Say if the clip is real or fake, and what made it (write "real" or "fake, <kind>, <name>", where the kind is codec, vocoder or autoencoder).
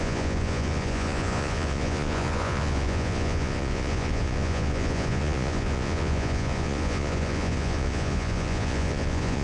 fake, vocoder, Vocos